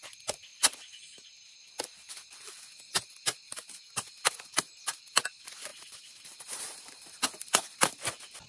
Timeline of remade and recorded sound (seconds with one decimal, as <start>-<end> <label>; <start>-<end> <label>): 0.0-5.7 recorded; 5.7-7.0 remade; 7.0-8.5 recorded